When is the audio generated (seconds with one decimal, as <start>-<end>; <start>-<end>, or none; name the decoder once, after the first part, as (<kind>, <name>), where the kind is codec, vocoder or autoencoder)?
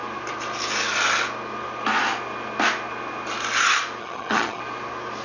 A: 4.0-4.6 (vocoder, HiFi-GAN)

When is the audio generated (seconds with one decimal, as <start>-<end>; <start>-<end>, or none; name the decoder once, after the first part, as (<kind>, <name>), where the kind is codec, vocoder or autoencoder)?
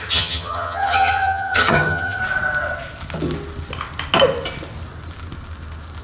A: 0.0-2.2 (vocoder, HiFi-GAN)